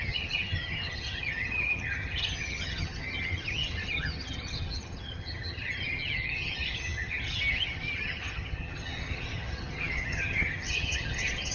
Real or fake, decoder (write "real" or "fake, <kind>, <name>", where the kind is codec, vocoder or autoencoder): fake, vocoder, HiFi-GAN